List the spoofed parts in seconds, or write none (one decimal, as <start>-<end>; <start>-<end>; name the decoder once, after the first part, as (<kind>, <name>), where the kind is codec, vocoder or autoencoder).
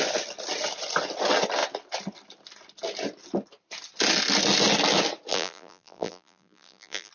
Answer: 5.3-7.1 (vocoder, BigVGAN v2)